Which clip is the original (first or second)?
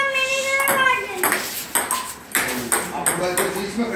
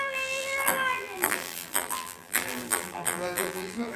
first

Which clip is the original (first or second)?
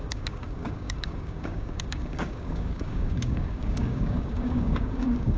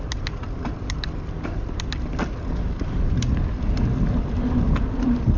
second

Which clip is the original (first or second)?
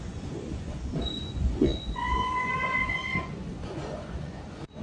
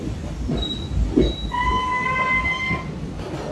second